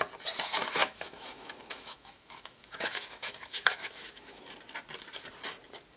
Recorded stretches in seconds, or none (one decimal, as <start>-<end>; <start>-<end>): 0.0-0.8; 4.4-6.0